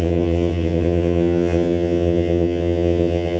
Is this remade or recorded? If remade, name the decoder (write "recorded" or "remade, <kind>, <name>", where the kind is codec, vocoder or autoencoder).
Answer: remade, vocoder, HiFi-GAN